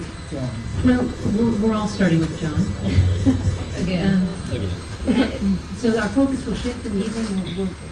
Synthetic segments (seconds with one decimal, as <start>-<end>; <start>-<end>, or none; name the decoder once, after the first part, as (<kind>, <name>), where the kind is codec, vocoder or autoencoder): none